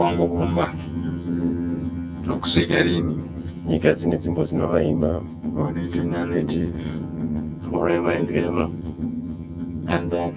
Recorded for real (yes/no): no